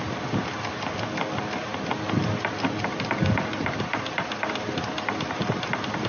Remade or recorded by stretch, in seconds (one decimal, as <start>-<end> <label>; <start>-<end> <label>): 0.0-6.1 recorded